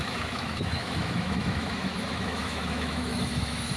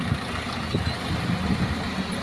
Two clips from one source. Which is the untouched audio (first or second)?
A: second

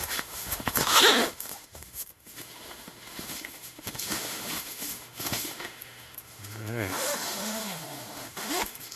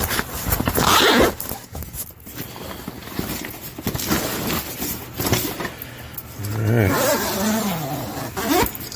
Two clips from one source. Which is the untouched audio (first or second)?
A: second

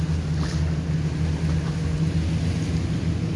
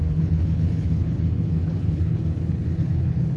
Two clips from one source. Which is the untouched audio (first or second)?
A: first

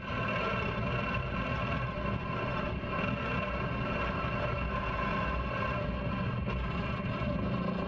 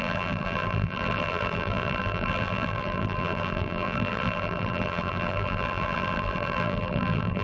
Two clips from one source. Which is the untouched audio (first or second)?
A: first